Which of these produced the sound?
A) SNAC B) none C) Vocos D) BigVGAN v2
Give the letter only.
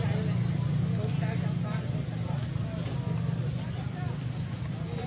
B